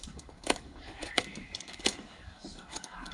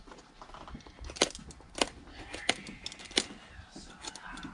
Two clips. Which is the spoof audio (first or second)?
first